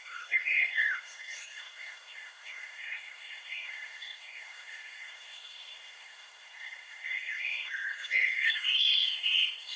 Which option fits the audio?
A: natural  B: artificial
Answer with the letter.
B